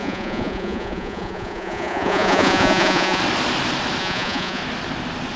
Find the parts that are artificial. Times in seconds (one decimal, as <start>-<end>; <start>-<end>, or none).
0.0-3.2; 4.0-4.6